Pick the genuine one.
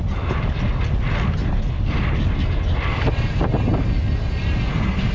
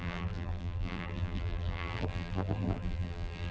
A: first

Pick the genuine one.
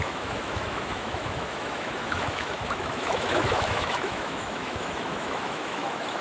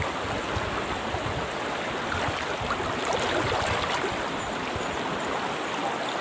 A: second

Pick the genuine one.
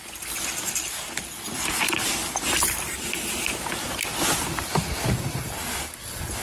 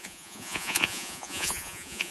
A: first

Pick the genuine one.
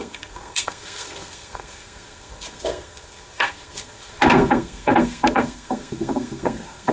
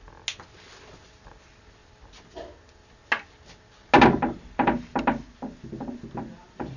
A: second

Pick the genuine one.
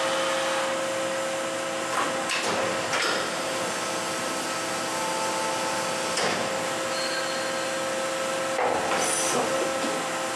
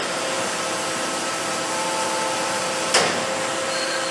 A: first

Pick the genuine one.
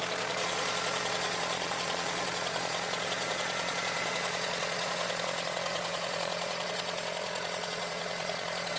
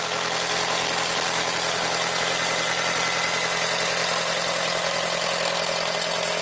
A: second